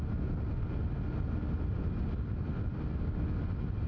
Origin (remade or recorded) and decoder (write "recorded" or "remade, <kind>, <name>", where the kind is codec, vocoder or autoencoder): recorded